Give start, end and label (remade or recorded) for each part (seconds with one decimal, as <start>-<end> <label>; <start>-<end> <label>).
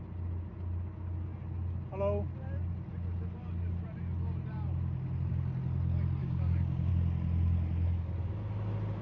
0.0-6.2 recorded; 6.2-6.9 remade; 6.9-9.0 recorded